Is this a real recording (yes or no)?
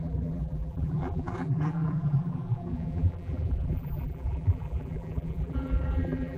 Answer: no